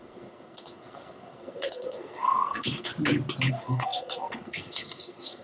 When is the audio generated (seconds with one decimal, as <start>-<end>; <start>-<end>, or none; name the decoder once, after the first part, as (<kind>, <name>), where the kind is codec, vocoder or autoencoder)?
0.0-2.9 (codec, SNAC); 3.5-5.4